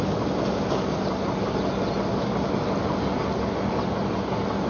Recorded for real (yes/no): yes